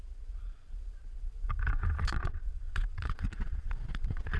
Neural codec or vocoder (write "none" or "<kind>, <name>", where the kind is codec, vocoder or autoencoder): vocoder, Vocos